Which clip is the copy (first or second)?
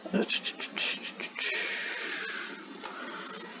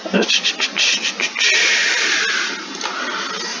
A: first